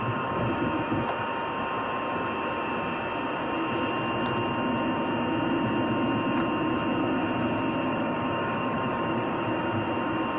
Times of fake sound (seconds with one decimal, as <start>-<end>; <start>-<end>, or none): 7.9-9.4